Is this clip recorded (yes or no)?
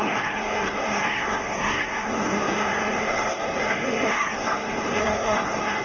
no